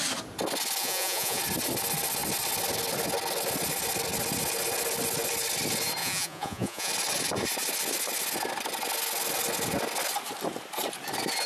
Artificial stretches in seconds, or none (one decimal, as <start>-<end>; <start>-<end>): 0.8-1.4; 6.0-6.9